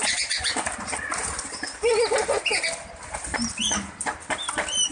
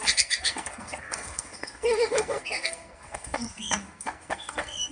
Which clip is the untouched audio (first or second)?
first